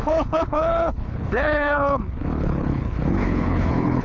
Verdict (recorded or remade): remade